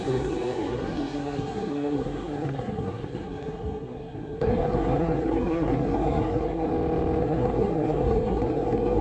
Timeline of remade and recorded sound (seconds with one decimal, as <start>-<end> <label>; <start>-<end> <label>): 0.0-6.7 remade; 6.7-7.2 recorded; 7.2-9.0 remade